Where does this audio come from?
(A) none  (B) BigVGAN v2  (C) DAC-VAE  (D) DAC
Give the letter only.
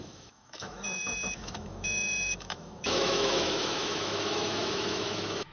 C